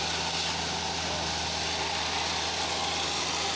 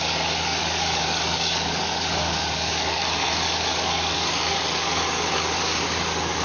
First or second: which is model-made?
second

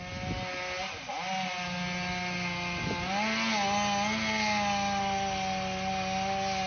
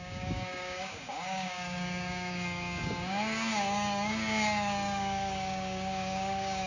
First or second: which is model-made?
second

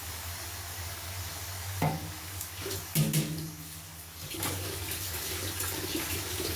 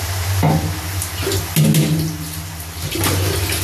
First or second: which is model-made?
first